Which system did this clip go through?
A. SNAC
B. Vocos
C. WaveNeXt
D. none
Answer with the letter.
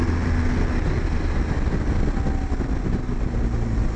D